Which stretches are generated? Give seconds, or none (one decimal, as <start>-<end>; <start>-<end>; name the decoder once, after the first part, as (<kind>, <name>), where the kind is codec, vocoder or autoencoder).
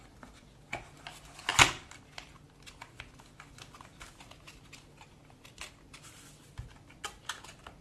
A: none